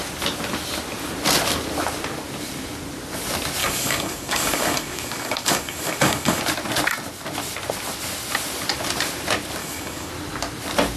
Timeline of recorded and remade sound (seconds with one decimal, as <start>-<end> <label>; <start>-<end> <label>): 0.0-3.6 recorded; 3.6-6.4 remade; 6.4-9.6 recorded; 9.6-10.1 remade; 10.1-11.0 recorded